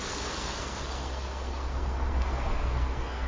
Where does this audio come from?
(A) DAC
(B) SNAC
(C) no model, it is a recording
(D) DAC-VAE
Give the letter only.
B